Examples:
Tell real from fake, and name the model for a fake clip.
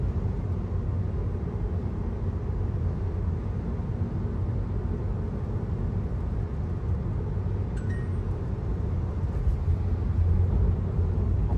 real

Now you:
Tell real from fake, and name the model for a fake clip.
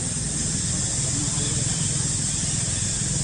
real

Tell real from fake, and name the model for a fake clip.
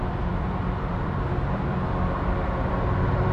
fake, vocoder, BigVGAN v2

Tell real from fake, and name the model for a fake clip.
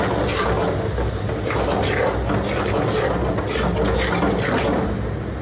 real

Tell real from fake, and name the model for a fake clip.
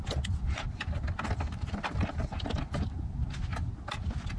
real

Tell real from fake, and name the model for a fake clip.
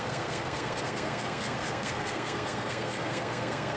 fake, codec, SNAC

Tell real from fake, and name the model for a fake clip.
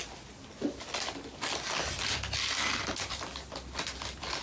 real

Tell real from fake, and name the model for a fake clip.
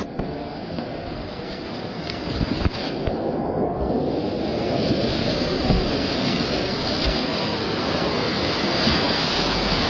fake, codec, SNAC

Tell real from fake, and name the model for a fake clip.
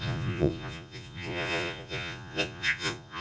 fake, vocoder, Vocos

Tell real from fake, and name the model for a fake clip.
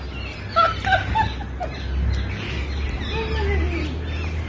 real